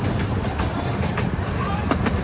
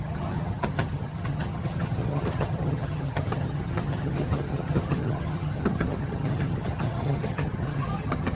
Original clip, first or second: first